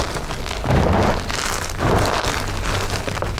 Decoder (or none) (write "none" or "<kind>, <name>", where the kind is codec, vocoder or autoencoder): none